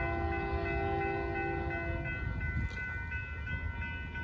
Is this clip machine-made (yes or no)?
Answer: no